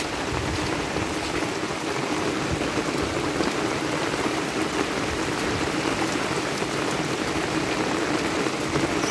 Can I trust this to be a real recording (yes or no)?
yes